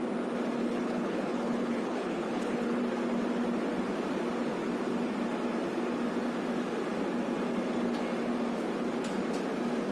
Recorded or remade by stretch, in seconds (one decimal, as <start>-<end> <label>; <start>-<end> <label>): 0.0-0.6 recorded; 0.6-2.8 remade; 2.8-9.9 recorded